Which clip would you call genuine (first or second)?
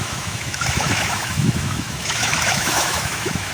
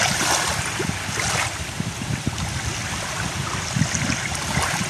second